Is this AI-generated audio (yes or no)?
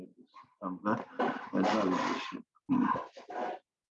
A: no